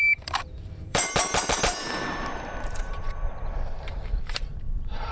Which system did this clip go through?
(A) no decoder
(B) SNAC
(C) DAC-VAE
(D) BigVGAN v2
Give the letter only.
D